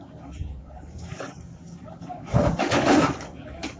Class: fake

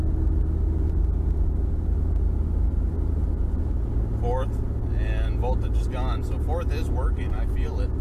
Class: real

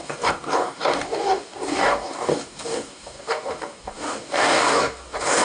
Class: fake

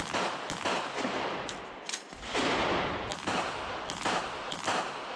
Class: real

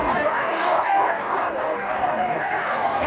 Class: fake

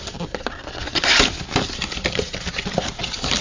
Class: real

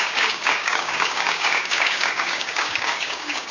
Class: fake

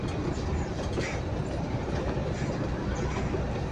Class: real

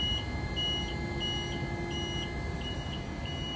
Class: real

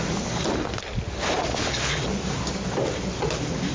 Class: real